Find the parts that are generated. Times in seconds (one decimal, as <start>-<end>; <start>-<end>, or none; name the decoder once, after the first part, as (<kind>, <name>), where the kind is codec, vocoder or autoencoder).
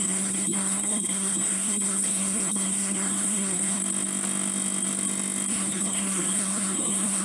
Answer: 0.0-3.8 (codec, SNAC); 5.5-7.2